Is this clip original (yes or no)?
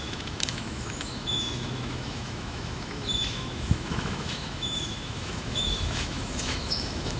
no